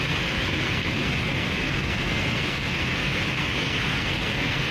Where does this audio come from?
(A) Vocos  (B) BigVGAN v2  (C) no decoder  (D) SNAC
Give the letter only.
D